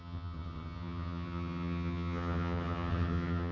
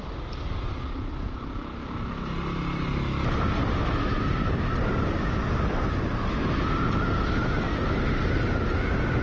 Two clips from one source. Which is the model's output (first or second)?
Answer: first